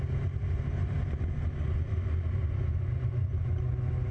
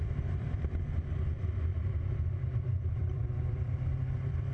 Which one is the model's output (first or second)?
second